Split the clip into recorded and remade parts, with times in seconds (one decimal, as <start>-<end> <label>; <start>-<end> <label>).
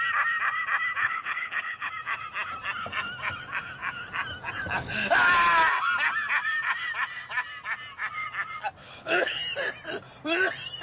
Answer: 0.0-1.0 recorded; 1.0-1.9 remade; 1.9-8.8 recorded; 8.8-9.4 remade; 9.4-10.8 recorded